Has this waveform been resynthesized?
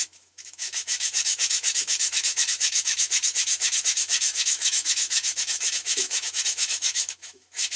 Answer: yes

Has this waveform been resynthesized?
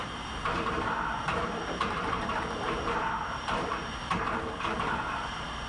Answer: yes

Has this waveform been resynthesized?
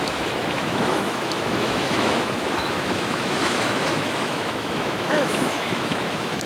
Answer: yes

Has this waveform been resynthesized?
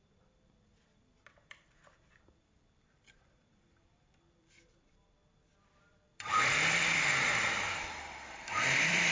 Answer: yes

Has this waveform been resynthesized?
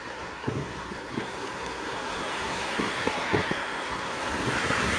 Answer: yes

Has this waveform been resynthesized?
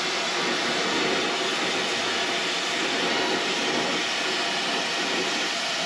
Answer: no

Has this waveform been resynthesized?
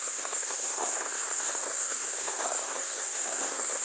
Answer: yes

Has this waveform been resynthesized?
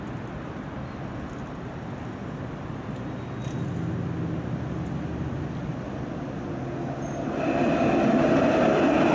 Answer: no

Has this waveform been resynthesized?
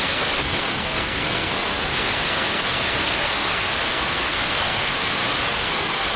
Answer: yes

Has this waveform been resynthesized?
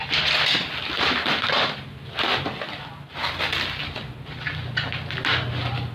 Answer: no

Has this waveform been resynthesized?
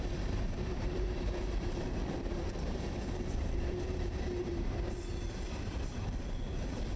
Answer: yes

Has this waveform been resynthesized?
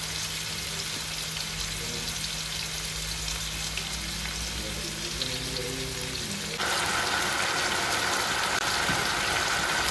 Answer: no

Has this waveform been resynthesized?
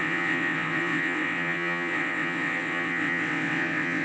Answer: yes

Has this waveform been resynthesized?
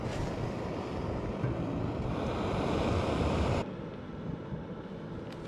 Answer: no